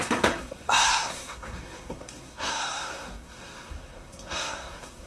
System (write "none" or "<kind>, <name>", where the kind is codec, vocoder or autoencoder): codec, SNAC